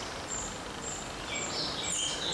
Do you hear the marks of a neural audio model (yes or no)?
no